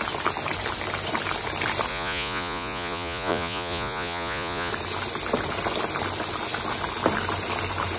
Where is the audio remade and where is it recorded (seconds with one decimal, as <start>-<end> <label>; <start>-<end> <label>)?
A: 0.0-1.9 recorded; 1.9-4.7 remade; 4.7-8.0 recorded

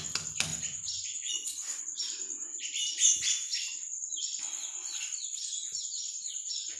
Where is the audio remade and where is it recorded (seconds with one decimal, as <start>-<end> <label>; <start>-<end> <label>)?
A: 0.0-0.5 recorded; 0.5-1.8 remade; 1.8-6.8 recorded

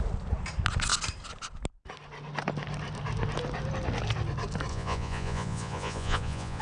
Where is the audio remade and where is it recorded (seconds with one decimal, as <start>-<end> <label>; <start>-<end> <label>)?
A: 0.0-4.7 recorded; 4.7-6.6 remade

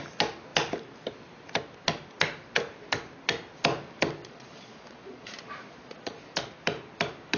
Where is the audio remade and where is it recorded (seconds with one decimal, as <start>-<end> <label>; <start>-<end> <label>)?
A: 0.0-4.2 recorded; 4.2-6.5 remade; 6.5-7.4 recorded

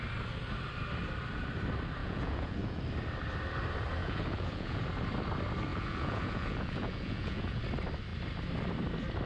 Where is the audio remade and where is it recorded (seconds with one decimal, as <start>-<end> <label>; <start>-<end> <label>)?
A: 0.0-2.0 recorded; 2.0-2.8 remade; 2.8-4.0 recorded; 4.0-4.8 remade; 4.8-5.7 recorded; 5.7-7.6 remade; 7.6-9.3 recorded

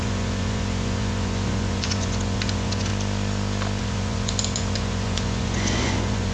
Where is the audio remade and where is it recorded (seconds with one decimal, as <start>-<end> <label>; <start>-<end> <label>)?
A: 0.0-2.9 remade; 2.9-3.8 recorded; 3.8-6.3 remade

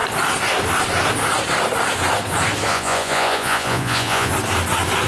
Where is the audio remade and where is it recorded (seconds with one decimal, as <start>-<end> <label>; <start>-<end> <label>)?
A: 0.0-2.7 recorded; 2.7-4.3 remade; 4.3-5.1 recorded